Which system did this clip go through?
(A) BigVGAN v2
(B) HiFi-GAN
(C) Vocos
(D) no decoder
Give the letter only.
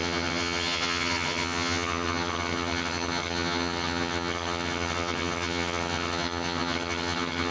B